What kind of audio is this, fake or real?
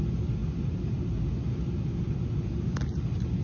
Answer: real